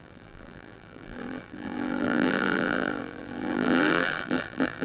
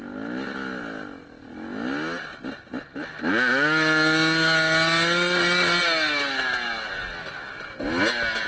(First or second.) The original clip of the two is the second